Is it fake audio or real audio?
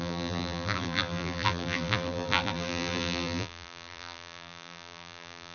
fake